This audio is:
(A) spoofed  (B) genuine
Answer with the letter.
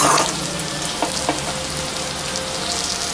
B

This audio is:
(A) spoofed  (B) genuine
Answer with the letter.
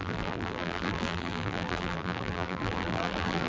A